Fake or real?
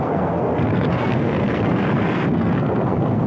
fake